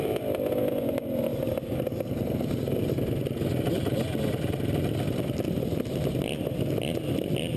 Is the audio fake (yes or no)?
no